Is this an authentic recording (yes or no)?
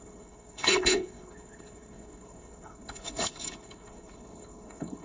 no